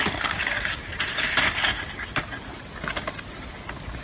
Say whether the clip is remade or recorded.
recorded